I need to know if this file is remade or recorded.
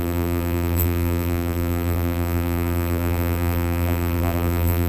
remade